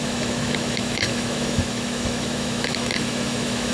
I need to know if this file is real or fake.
fake